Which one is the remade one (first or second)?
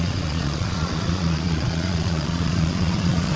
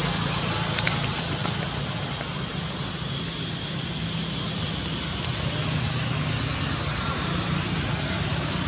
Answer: first